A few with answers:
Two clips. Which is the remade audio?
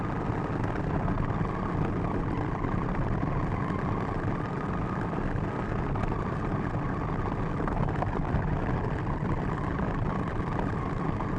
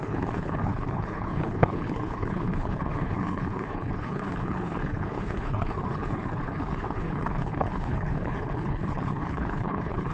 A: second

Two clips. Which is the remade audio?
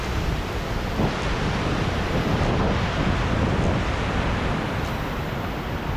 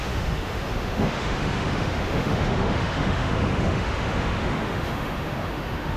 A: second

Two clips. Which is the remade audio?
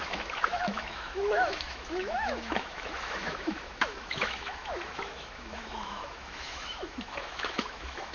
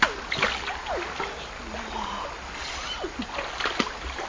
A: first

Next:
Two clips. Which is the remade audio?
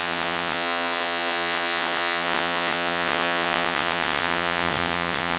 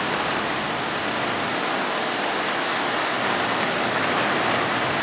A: first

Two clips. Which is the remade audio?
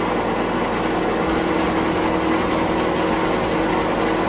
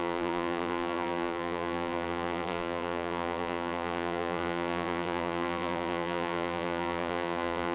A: second